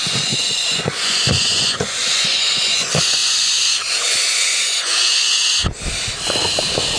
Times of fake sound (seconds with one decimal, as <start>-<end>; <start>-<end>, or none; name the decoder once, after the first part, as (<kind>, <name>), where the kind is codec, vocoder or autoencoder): 0.0-5.4 (vocoder, Vocos)